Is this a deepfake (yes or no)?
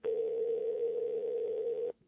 yes